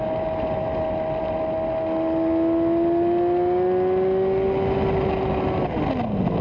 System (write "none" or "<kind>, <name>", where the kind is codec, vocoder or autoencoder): none